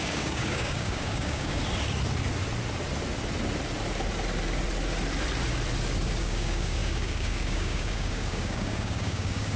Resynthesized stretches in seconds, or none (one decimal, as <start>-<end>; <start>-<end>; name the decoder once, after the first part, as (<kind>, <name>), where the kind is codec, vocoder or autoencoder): 0.0-1.6 (codec, DAC); 6.2-9.6